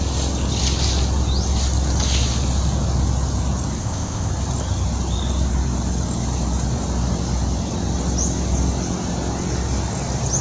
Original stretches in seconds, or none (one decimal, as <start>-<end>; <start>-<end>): 0.0-3.8; 4.3-10.4